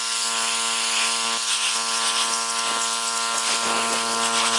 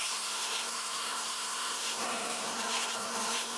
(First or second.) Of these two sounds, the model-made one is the second